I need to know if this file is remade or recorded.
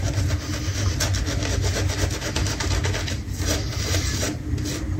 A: recorded